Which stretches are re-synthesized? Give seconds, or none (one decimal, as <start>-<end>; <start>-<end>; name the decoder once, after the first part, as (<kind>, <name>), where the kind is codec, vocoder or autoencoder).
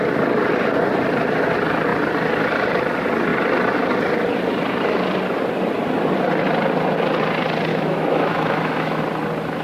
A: 7.7-9.0 (autoencoder, DAC-VAE)